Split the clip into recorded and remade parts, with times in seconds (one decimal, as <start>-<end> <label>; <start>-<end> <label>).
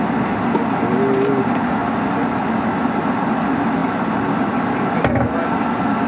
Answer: 0.0-6.1 recorded